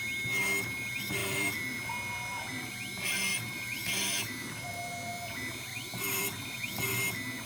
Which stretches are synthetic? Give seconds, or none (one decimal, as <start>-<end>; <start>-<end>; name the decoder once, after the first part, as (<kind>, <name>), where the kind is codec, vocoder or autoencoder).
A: 1.2-2.7 (vocoder, BigVGAN v2); 3.3-4.7; 5.7-6.9